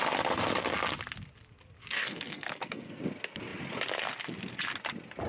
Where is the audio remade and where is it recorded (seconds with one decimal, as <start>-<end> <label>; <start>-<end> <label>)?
0.0-1.8 recorded; 1.8-3.0 remade; 3.0-5.3 recorded